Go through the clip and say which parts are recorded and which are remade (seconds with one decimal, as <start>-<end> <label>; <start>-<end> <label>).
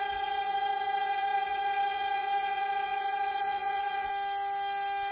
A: 0.0-4.1 remade; 4.1-5.1 recorded